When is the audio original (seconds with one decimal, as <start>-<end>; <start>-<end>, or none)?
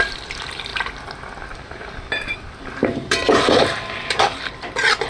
0.7-1.3